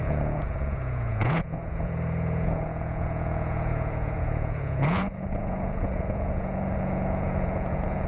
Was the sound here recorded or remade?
remade